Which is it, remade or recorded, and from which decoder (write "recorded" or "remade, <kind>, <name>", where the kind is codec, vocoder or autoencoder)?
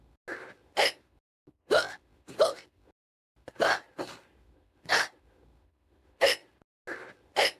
recorded